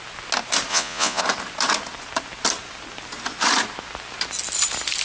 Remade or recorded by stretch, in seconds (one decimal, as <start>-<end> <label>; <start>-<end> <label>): 0.0-0.7 recorded; 0.7-1.2 remade; 1.2-5.0 recorded